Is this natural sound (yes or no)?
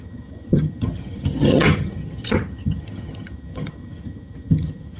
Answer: no